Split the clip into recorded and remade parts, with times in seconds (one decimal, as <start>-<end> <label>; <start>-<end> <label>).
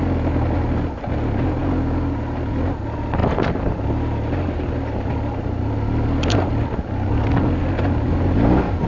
0.0-8.9 recorded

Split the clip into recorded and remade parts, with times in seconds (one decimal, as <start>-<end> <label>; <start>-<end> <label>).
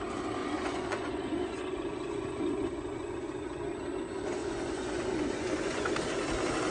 0.0-0.4 recorded; 0.4-3.7 remade; 3.7-4.4 recorded; 4.4-5.9 remade; 5.9-6.7 recorded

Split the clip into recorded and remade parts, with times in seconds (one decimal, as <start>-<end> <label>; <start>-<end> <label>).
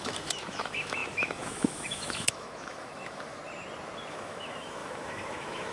0.0-3.4 remade; 3.4-4.1 recorded; 4.1-5.7 remade